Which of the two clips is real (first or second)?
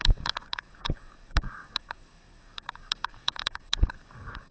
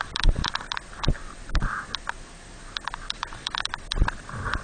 second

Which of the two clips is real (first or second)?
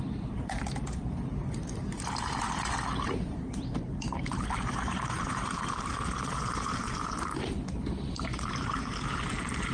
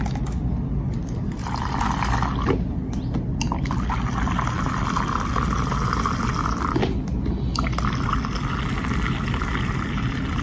second